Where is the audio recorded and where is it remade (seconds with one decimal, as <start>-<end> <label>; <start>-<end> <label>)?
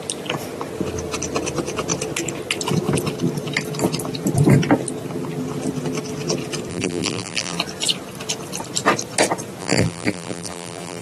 0.0-6.7 recorded; 6.7-7.6 remade; 7.6-9.6 recorded; 9.6-11.0 remade